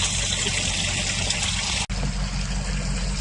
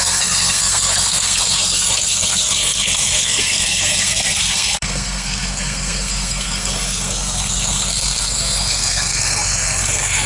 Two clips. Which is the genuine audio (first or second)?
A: first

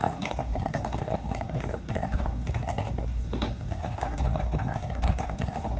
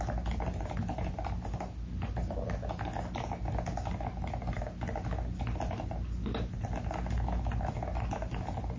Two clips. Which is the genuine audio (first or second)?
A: second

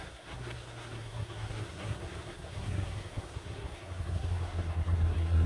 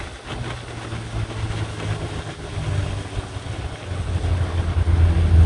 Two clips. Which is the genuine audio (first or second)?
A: second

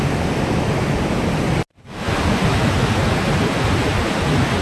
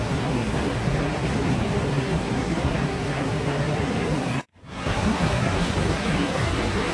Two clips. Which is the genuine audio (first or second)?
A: first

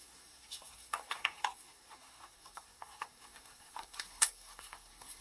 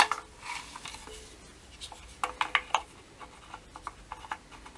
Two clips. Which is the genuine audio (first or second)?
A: second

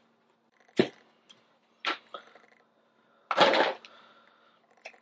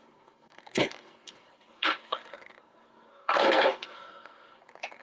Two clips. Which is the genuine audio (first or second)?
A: first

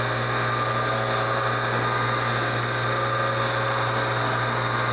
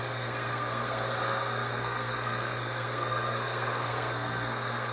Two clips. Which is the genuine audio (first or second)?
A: first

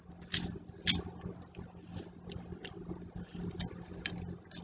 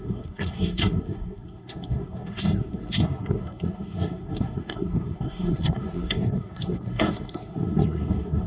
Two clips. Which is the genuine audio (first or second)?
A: first